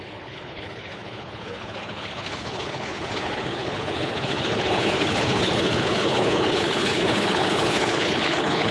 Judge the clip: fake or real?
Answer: fake